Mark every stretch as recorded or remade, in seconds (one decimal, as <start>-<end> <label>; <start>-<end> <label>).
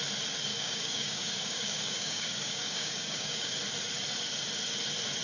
0.0-0.5 recorded; 0.5-3.6 remade; 3.6-5.2 recorded